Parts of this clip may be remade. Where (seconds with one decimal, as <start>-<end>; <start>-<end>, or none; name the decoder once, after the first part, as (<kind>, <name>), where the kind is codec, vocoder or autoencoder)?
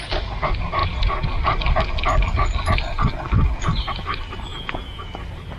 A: 4.5-5.1 (vocoder, Vocos)